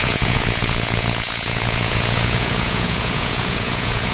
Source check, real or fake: fake